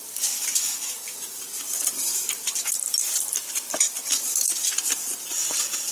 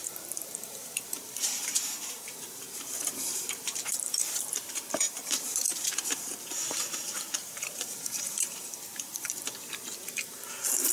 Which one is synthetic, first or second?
second